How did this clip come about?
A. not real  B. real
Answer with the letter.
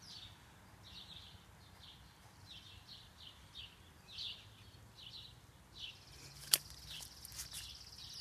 B